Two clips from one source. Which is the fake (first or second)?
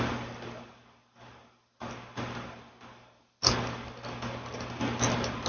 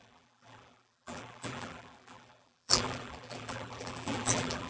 second